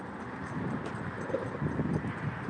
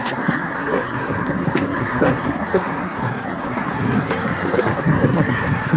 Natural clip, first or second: first